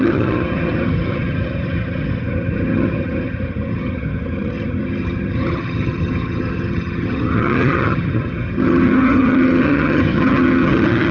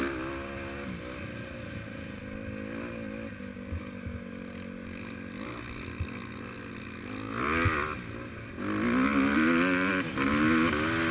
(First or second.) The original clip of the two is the second